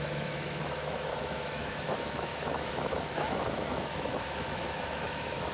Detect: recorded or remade remade